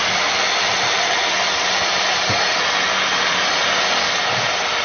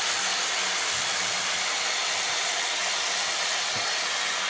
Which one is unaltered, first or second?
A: first